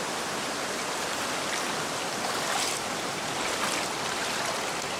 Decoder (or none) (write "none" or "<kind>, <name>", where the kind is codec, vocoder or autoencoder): none